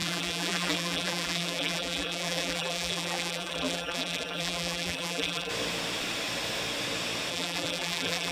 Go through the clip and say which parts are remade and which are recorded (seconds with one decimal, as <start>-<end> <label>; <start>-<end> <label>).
0.0-5.5 remade; 5.5-7.3 recorded; 7.3-8.3 remade